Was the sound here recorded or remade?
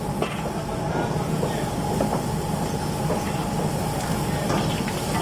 recorded